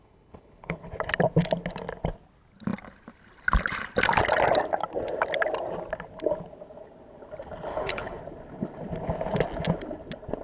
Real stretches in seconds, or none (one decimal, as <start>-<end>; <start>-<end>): 0.9-7.7; 8.2-10.4